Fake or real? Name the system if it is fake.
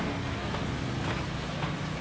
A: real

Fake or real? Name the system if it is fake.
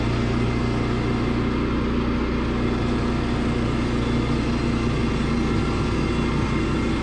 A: real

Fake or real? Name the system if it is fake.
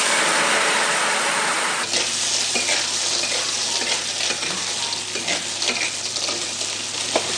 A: real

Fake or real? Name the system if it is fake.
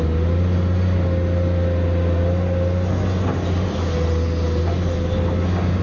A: real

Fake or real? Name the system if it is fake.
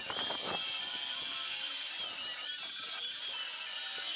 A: real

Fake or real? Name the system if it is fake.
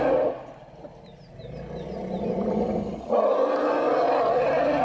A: real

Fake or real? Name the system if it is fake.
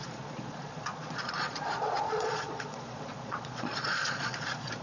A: fake, vocoder, Vocos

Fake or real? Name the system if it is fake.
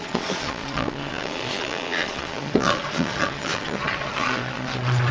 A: fake, vocoder, Vocos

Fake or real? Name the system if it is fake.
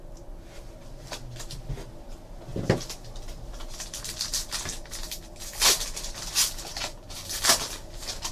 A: real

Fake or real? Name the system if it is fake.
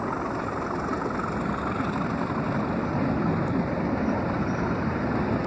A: real